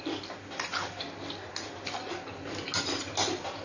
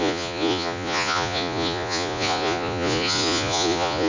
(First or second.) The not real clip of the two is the second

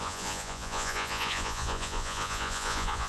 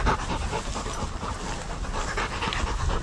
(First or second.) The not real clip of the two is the first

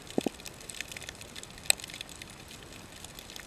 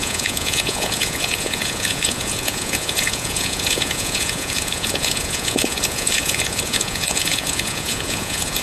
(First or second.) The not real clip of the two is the second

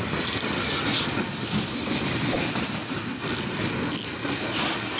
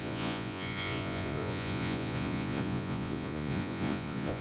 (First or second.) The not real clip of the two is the second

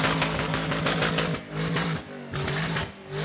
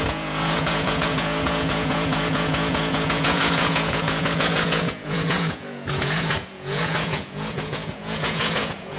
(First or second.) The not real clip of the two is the second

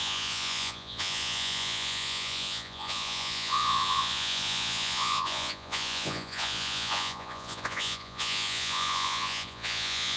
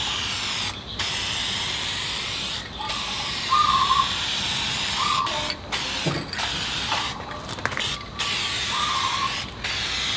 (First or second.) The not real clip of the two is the first